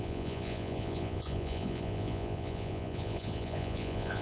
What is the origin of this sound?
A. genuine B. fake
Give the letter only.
B